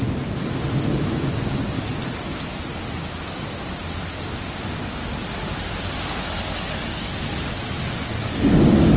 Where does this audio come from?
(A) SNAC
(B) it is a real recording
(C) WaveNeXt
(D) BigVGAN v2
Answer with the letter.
B